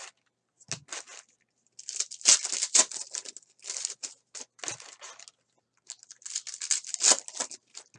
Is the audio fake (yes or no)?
no